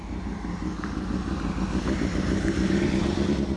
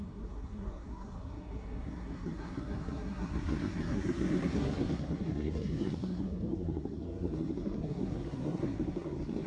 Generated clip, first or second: second